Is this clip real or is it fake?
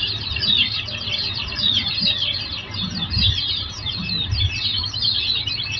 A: real